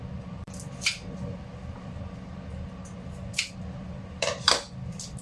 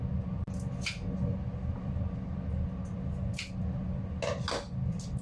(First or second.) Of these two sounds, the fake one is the first